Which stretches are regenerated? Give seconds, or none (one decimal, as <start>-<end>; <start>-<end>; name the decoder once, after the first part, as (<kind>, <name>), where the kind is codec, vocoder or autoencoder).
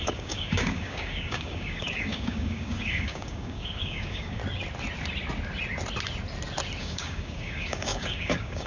0.0-4.4 (codec, DAC); 6.8-8.7